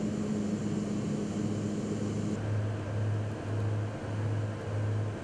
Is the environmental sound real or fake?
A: real